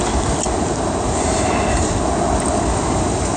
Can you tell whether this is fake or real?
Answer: real